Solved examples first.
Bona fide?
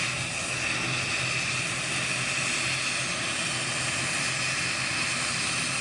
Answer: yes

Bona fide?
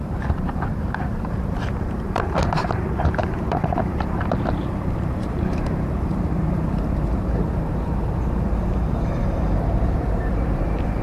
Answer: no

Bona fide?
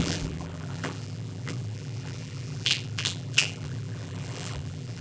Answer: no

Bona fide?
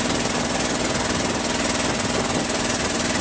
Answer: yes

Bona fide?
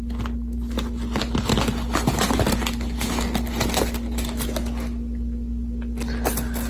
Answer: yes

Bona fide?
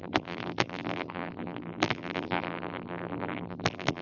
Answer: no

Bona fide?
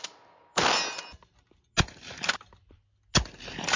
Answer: yes